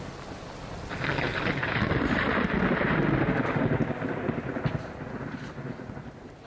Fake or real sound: real